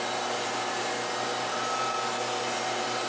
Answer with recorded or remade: recorded